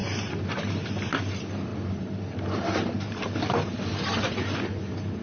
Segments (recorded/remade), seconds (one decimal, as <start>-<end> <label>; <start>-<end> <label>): 0.0-1.2 remade; 1.2-1.7 recorded; 1.7-4.0 remade; 4.0-5.2 recorded